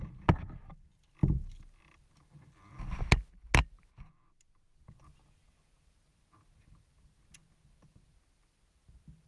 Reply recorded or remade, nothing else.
recorded